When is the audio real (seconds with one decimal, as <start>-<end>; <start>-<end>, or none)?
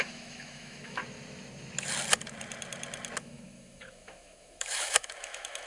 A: 1.0-3.2